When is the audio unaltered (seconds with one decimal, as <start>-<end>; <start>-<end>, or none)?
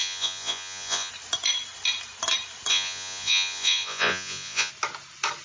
1.1-2.7; 4.7-5.4